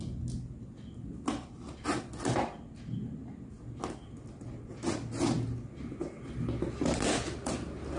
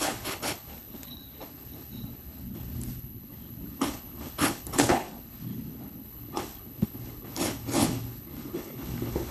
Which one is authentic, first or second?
first